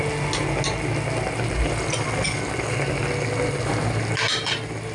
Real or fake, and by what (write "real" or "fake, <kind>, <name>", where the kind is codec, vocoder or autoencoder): real